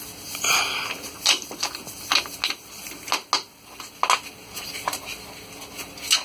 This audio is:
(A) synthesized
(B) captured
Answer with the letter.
B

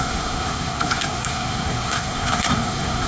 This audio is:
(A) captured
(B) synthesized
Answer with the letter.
B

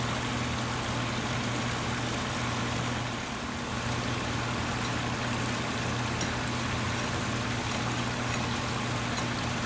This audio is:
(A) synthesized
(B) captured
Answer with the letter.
B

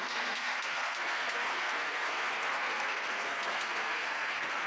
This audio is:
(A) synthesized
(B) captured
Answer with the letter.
A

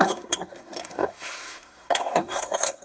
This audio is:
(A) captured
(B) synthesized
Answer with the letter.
B